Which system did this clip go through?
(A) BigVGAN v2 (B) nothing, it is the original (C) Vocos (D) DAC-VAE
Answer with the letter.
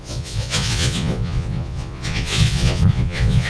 C